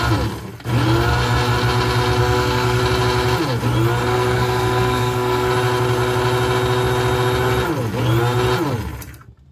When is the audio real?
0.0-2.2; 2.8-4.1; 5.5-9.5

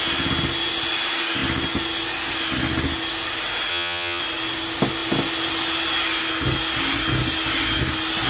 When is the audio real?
0.0-3.7; 4.2-8.3

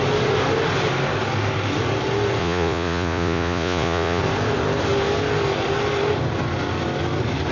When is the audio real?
0.0-2.4; 4.2-7.5

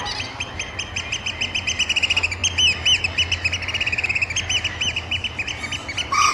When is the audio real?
0.0-6.3

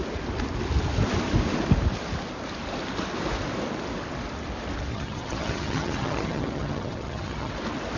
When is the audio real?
0.0-4.9; 7.5-8.0

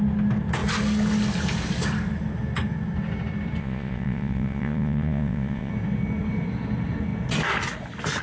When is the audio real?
0.0-3.6; 5.7-8.2

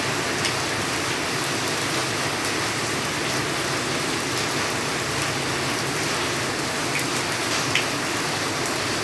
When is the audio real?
0.0-9.0

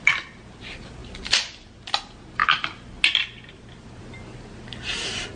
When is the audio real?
0.0-5.4